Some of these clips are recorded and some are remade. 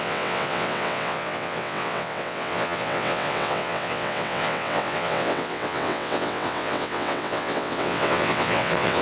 remade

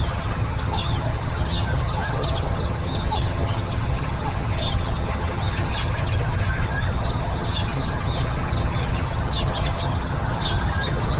remade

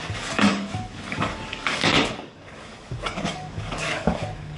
remade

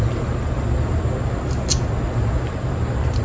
recorded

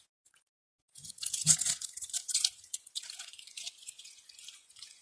remade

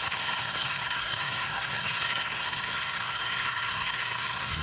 remade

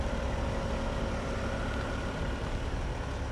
recorded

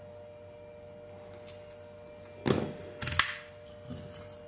recorded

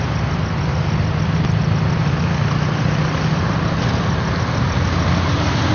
recorded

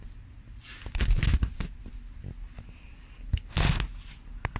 recorded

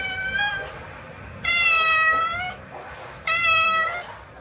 remade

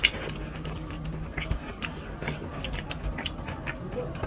recorded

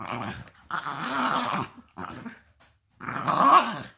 recorded